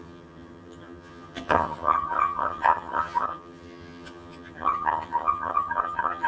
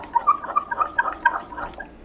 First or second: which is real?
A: second